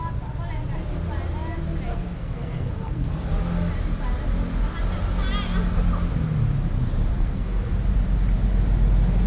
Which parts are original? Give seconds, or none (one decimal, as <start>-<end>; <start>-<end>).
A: 0.0-1.9; 3.3-7.1; 7.7-9.3